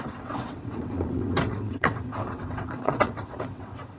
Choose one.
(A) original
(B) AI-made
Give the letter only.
B